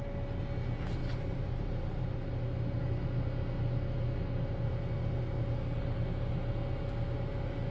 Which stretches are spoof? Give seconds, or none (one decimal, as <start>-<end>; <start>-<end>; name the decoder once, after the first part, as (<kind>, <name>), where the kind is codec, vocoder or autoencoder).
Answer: 1.0-2.2 (vocoder, BigVGAN v2)